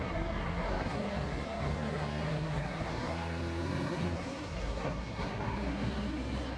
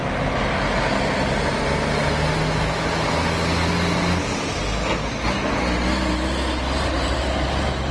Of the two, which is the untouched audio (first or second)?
second